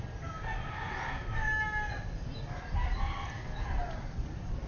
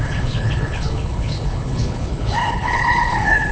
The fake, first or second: second